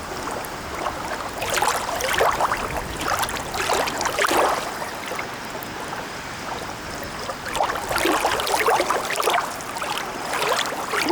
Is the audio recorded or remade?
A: recorded